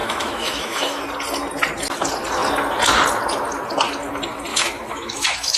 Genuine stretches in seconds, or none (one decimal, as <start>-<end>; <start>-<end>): 1.0-4.5